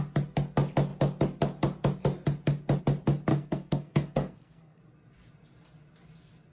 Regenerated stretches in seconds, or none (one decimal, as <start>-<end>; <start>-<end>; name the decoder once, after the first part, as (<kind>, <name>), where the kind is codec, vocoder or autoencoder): 3.3-4.8 (codec, SNAC)